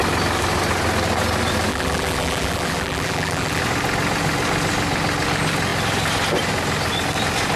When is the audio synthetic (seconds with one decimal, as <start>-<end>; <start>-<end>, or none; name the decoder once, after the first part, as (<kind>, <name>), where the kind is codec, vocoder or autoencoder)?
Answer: 1.7-3.6 (vocoder, BigVGAN v2)